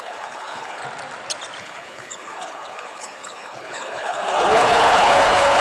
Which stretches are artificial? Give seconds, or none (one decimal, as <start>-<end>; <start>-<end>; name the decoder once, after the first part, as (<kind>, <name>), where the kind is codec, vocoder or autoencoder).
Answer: 0.0-0.8 (codec, HILCodec); 1.6-5.6